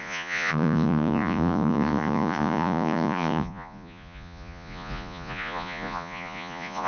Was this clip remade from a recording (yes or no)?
yes